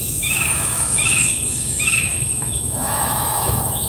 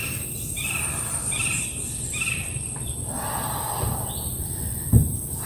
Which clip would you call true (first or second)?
second